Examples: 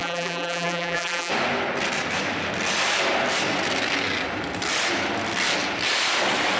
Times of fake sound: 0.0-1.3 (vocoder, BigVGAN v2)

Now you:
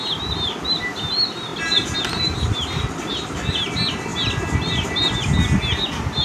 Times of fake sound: none

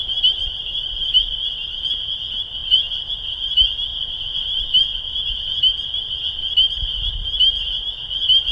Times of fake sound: 0.4-1.2 (vocoder, BigVGAN v2); 1.6-2.2; 2.6-3.1; 3.9-4.6

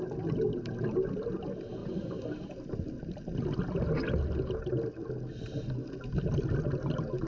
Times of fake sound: 1.8-2.5 (vocoder, BigVGAN v2)

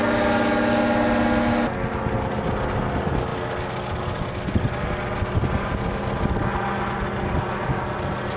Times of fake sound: none

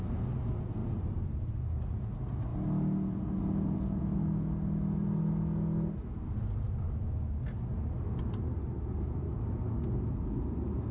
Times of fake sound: 0.8-2.0 (vocoder, BigVGAN v2)